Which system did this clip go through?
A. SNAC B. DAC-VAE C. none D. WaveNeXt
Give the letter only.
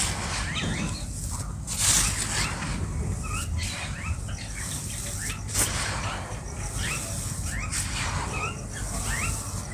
C